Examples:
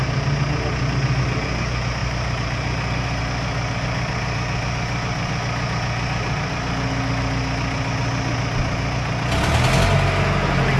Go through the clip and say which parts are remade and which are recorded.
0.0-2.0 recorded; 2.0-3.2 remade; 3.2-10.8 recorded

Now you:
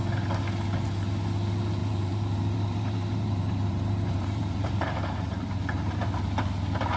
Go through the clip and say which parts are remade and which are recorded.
0.0-1.8 recorded; 1.8-6.0 remade; 6.0-7.0 recorded

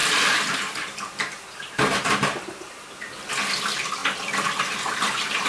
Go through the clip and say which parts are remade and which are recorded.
0.0-3.3 remade; 3.3-5.5 recorded

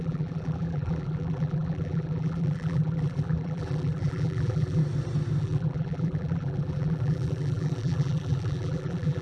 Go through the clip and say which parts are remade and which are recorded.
0.0-4.8 remade; 4.8-5.4 recorded; 5.4-9.2 remade